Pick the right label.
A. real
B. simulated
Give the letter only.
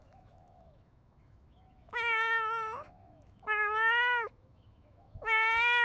B